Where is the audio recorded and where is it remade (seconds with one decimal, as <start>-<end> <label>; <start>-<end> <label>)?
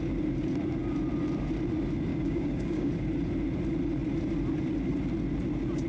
0.0-2.1 recorded; 2.1-2.9 remade; 2.9-5.9 recorded